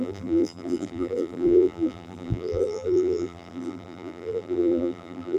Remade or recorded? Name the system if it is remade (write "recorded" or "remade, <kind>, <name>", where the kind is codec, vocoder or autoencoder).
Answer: remade, vocoder, BigVGAN v2